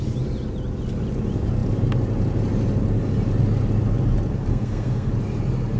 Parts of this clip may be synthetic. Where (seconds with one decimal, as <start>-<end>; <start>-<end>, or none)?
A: 4.5-5.1